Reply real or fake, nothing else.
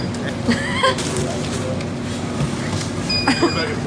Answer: real